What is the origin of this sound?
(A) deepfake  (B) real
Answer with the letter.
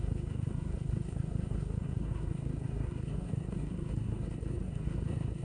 A